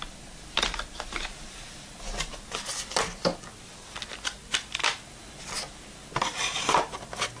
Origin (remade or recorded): recorded